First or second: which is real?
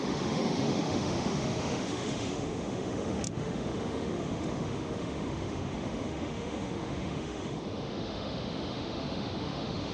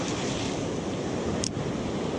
second